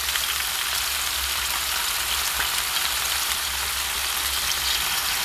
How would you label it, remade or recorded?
recorded